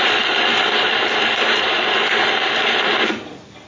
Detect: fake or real fake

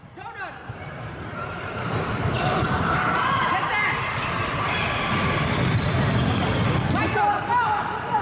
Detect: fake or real fake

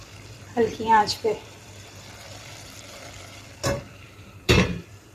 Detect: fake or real fake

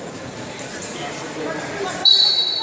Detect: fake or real fake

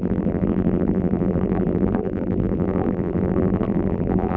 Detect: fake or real fake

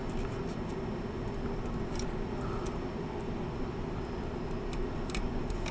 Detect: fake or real real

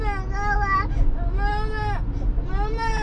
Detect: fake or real real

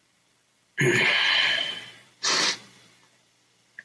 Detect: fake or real fake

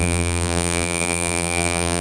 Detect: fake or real fake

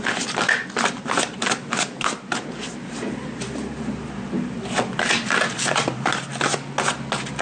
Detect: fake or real real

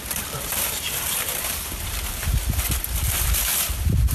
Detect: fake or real fake